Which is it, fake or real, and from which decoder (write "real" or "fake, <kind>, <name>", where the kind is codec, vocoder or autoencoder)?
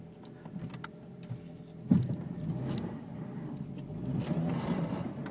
real